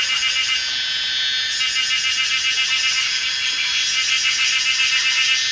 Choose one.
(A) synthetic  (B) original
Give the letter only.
B